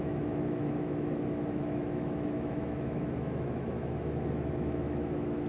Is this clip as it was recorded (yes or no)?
no